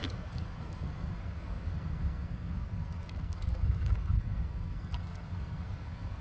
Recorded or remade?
remade